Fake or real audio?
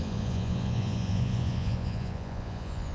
fake